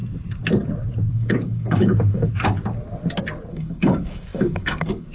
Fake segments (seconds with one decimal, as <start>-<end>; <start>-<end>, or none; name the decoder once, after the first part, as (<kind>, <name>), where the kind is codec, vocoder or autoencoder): 1.1-2.3 (codec, DAC); 3.5-5.1